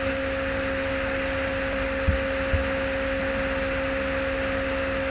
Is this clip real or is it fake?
real